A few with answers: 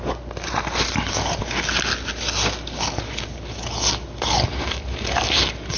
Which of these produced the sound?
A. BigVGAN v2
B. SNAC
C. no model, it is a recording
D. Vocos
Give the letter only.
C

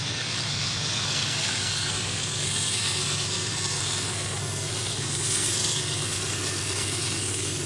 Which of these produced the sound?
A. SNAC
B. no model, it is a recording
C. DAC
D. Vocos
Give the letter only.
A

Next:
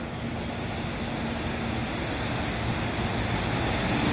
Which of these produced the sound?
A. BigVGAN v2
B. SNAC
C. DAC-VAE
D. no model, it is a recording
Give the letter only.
D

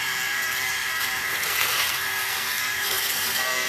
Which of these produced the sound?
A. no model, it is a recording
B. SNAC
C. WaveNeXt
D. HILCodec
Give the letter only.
B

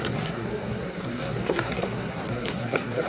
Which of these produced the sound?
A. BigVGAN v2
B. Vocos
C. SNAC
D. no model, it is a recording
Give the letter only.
C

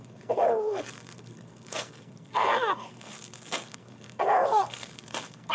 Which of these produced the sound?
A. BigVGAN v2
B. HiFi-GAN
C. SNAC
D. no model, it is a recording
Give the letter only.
C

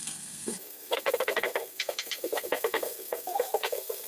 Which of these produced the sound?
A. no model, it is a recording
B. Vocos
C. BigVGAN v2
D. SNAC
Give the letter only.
D